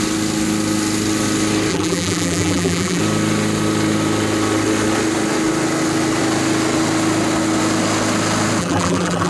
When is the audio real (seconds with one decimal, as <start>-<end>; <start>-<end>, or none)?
0.0-1.7; 3.0-8.6

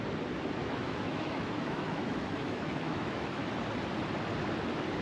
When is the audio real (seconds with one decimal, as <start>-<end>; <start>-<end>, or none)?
0.0-0.6; 3.6-5.0